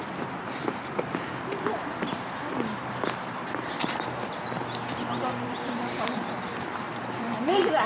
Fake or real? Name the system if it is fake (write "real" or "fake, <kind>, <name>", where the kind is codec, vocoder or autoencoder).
fake, vocoder, BigVGAN v2